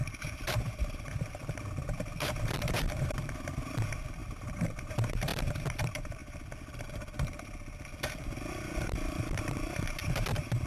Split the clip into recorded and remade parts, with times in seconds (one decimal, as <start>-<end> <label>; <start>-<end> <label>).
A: 0.0-6.2 remade; 6.2-8.2 recorded; 8.2-10.7 remade